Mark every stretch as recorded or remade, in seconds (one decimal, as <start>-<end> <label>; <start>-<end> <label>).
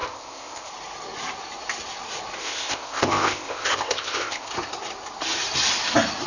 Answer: 0.0-0.7 remade; 0.7-2.4 recorded; 2.4-4.5 remade; 4.5-6.3 recorded